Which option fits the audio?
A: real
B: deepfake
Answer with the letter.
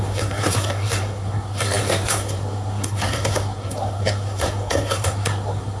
B